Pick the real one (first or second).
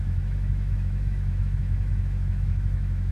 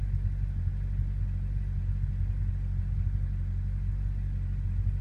second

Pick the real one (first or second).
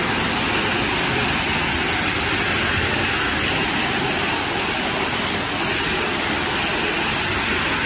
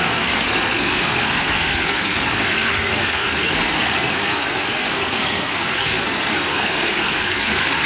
first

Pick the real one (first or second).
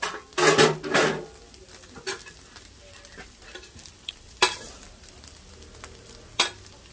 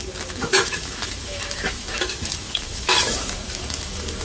first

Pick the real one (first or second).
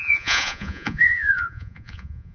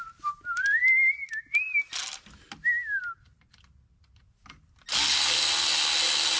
second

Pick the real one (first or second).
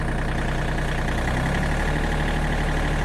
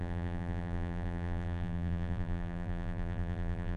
first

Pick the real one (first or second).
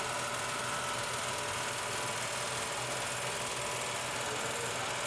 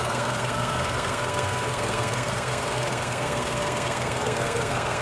first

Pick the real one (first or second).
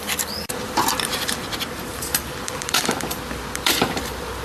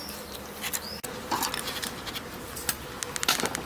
second